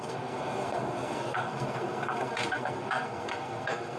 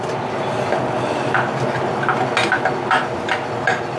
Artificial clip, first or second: first